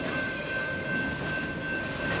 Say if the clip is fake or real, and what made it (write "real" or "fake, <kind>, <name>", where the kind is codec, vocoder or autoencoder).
real